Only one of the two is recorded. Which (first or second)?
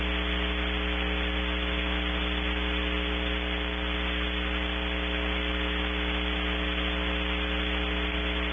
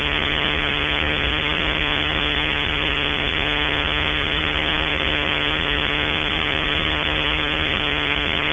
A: first